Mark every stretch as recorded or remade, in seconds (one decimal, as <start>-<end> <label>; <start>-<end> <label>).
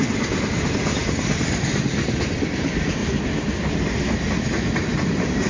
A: 0.0-3.0 remade; 3.0-3.6 recorded; 3.6-5.5 remade